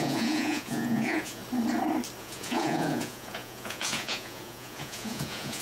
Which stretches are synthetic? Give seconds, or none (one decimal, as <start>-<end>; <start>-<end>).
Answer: 0.0-1.4; 2.2-5.6